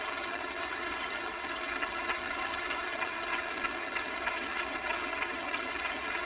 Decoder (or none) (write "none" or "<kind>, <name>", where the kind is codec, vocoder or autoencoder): vocoder, HiFi-GAN